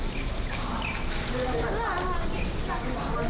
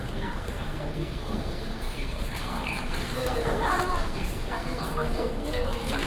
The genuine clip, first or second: first